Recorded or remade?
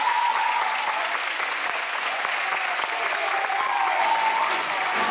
remade